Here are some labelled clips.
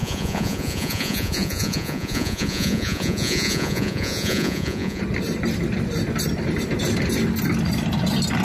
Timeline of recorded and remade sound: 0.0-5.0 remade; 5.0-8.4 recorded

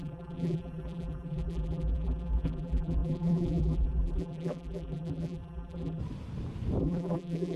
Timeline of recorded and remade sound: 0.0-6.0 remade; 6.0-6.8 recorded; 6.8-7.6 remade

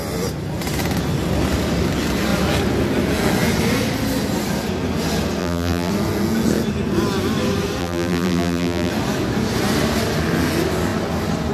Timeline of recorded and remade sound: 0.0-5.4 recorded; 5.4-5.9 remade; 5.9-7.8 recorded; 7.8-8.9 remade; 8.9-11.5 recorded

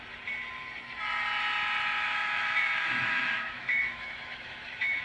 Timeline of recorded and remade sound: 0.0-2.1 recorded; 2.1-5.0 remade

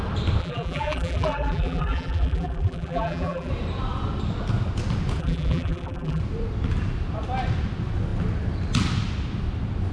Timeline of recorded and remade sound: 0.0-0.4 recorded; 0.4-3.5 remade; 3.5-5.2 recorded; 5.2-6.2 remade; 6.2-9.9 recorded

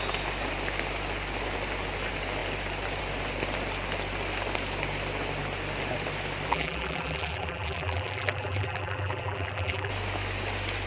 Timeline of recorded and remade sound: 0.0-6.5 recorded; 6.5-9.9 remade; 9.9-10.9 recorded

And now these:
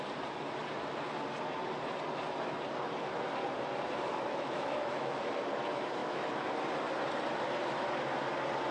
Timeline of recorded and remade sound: 0.0-4.1 recorded; 4.1-5.3 remade; 5.3-6.0 recorded; 6.0-6.5 remade; 6.5-8.7 recorded